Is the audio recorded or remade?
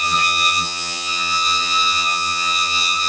remade